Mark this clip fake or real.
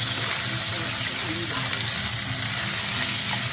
real